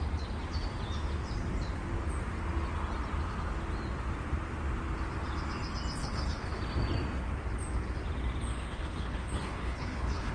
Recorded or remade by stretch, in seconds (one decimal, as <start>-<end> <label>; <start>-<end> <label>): 0.0-6.0 recorded; 6.0-6.6 remade; 6.6-8.5 recorded; 8.5-10.3 remade